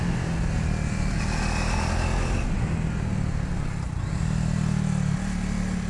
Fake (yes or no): no